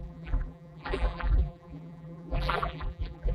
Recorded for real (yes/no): no